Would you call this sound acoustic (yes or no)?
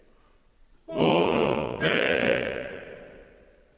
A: no